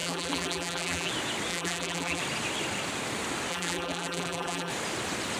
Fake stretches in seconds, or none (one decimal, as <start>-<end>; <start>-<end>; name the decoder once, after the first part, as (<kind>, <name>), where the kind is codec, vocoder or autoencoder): 0.0-1.1 (vocoder, BigVGAN v2); 1.5-2.2; 3.5-4.7